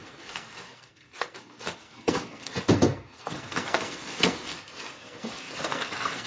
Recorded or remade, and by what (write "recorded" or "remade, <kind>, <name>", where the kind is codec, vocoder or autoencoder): remade, codec, SNAC